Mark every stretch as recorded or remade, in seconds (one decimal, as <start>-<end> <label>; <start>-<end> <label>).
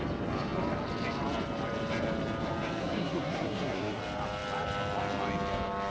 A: 0.0-2.8 recorded; 2.8-4.0 remade; 4.0-5.9 recorded